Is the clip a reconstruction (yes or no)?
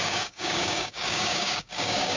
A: yes